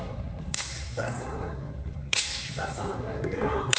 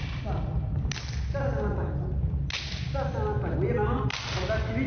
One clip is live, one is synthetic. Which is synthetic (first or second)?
first